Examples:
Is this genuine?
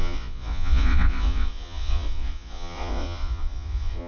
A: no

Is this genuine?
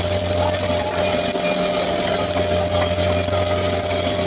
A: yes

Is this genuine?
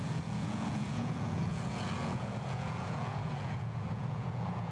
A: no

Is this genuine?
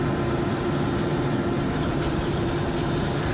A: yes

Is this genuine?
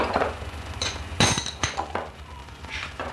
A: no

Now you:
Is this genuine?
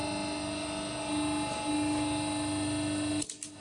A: yes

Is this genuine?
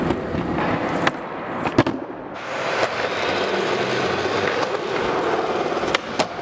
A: yes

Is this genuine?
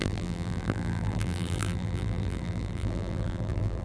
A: no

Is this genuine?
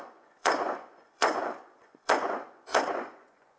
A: no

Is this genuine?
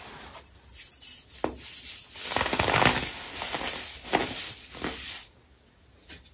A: yes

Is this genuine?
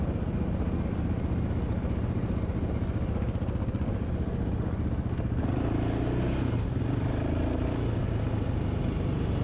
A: yes